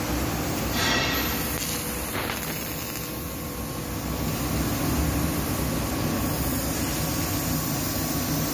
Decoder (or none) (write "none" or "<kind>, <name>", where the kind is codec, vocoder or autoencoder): none